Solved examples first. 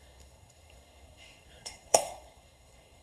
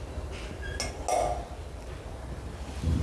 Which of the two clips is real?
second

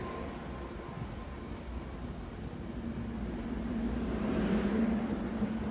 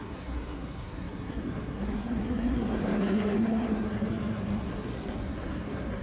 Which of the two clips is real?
first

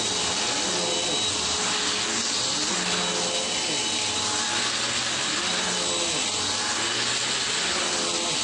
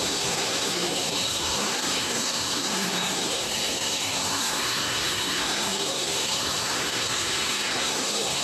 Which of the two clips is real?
first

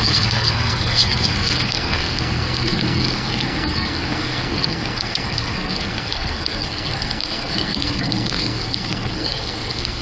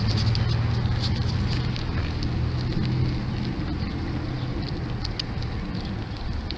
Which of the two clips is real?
second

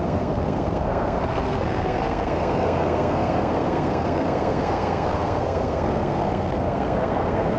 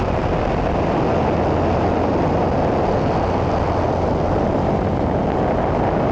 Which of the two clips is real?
second